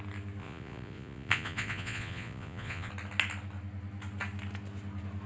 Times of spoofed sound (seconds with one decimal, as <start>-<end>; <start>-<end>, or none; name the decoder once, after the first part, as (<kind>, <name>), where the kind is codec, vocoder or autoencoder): 0.4-2.9 (vocoder, Vocos)